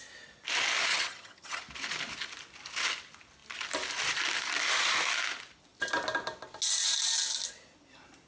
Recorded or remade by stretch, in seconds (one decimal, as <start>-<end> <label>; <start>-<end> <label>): 0.0-0.9 recorded; 0.9-1.6 remade; 1.6-8.3 recorded